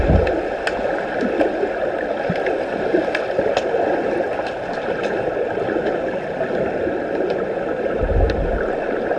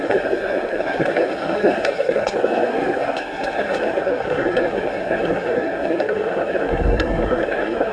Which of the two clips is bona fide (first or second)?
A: first